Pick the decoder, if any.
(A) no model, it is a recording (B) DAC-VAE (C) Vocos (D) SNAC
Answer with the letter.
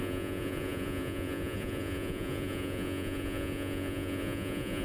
C